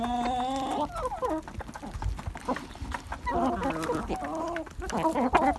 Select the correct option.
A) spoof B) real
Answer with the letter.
B